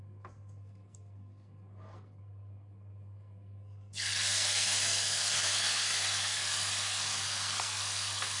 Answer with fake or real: fake